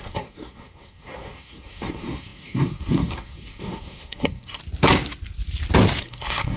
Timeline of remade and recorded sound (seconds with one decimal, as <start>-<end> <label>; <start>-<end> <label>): 0.0-4.6 remade; 4.6-6.0 recorded; 6.0-6.6 remade